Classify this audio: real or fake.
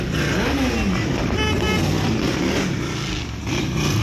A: real